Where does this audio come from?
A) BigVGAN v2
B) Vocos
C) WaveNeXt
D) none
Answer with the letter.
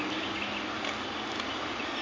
D